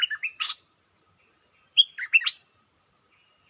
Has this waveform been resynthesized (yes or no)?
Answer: no